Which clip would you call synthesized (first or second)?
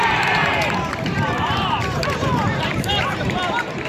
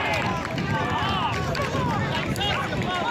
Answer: first